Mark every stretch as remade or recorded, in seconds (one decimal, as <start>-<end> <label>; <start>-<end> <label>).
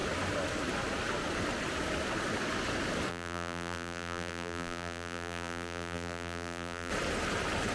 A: 0.0-3.1 recorded; 3.1-6.9 remade; 6.9-7.7 recorded